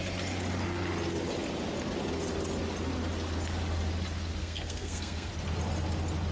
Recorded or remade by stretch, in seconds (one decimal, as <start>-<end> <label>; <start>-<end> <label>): 0.0-4.4 recorded; 4.4-5.3 remade; 5.3-6.3 recorded